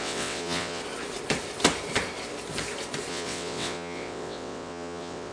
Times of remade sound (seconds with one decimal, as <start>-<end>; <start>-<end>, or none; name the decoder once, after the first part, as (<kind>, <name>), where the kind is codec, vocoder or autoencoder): 0.0-0.8 (vocoder, WaveNeXt); 3.1-5.3